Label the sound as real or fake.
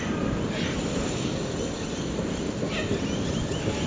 real